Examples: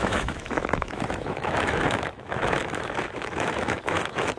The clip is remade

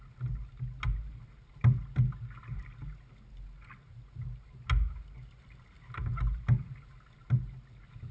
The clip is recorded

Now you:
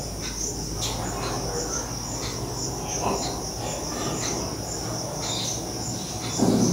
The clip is recorded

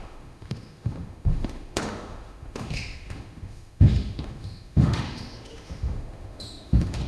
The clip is remade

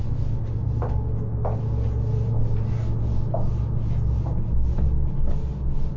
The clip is recorded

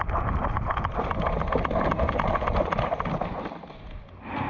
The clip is recorded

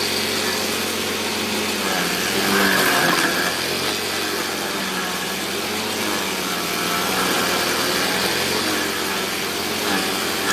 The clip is recorded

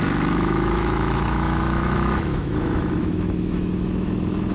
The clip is remade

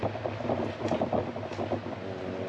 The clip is recorded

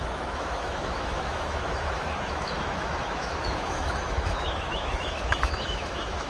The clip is remade